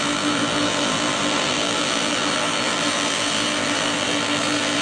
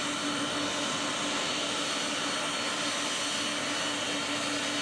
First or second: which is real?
second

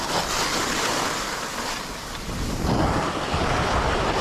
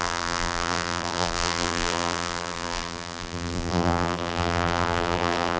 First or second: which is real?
first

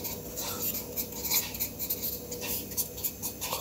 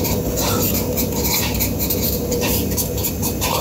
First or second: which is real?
first